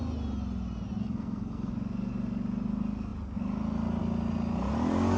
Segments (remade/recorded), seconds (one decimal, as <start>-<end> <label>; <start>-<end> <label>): 0.0-1.0 recorded; 1.0-1.7 remade; 1.7-5.2 recorded